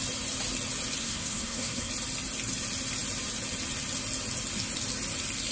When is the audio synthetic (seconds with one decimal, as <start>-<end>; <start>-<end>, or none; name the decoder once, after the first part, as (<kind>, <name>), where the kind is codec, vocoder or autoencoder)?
1.0-1.9 (codec, SNAC)